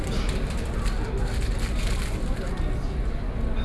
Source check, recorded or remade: recorded